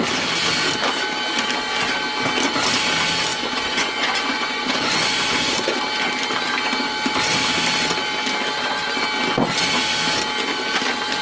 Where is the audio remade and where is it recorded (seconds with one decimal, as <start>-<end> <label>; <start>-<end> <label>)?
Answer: 0.0-3.3 recorded; 3.3-5.8 remade; 5.8-11.2 recorded